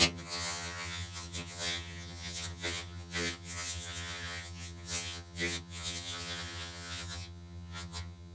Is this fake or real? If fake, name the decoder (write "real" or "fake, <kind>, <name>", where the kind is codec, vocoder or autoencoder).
fake, vocoder, HiFi-GAN